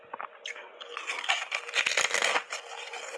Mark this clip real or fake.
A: real